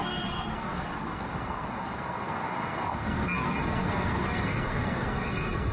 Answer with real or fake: fake